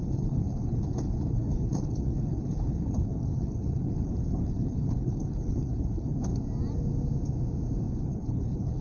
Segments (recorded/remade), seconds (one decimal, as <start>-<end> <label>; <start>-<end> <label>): 0.0-6.3 remade; 6.3-7.9 recorded; 7.9-8.8 remade